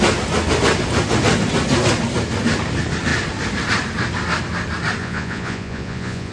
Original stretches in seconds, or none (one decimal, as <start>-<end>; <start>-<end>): 0.0-5.0